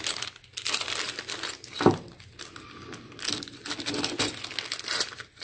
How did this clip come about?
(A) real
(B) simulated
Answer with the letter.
A